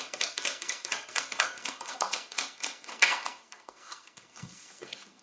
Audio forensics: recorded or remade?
remade